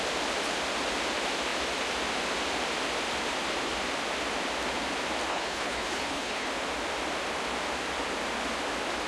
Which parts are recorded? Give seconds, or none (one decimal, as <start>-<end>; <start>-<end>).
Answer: 0.0-5.3; 6.5-9.1